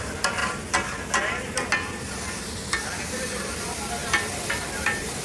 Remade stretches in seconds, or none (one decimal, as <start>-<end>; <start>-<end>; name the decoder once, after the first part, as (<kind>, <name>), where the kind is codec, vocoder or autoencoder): 0.0-0.4 (vocoder, BigVGAN v2); 3.5-5.2